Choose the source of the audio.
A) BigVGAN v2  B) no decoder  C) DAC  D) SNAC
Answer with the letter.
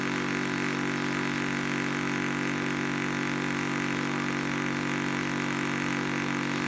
B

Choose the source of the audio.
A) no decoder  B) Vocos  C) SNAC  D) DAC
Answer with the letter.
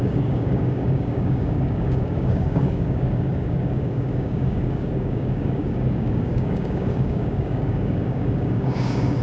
D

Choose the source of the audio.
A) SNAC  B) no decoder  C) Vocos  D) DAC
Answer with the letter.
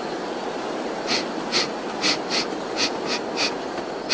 B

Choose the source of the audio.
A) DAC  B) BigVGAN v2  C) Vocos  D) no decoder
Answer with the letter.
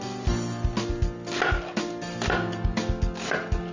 D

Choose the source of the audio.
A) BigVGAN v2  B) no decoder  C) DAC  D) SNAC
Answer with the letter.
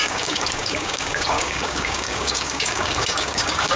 C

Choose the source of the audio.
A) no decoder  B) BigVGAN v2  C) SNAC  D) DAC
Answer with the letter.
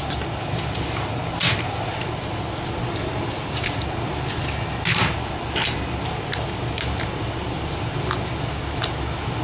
A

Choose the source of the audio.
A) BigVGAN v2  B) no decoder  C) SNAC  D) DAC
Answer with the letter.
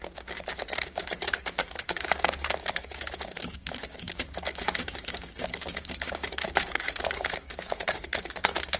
D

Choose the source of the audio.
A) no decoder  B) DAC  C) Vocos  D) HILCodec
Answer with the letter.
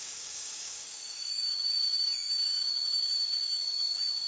B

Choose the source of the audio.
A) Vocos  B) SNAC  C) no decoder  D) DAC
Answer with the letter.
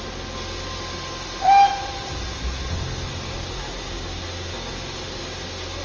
C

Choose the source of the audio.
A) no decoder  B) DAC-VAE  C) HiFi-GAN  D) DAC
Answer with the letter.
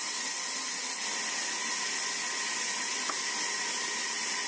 A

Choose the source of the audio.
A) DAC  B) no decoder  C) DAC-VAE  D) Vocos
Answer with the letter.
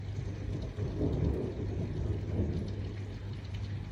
B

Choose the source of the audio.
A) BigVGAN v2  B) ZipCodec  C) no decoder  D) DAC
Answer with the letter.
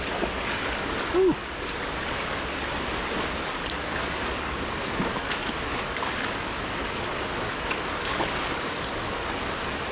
D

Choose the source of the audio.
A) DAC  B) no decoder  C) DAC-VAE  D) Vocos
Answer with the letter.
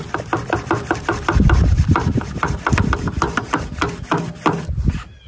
B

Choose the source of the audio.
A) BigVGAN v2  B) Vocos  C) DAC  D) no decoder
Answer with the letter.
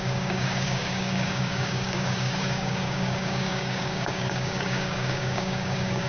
C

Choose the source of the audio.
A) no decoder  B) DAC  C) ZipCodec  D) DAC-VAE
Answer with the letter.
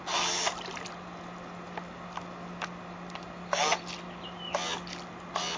A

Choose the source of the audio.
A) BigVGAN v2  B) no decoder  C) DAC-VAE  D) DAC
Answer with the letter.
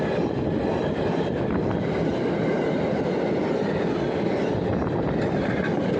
B